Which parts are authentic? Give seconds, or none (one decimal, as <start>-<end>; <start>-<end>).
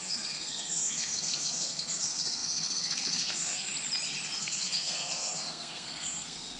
3.7-4.4